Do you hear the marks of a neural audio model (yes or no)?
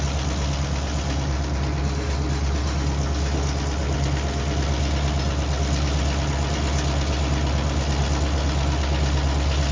no